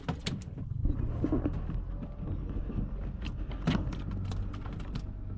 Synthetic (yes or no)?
no